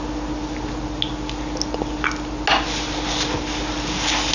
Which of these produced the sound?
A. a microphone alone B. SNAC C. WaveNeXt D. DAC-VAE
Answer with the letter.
A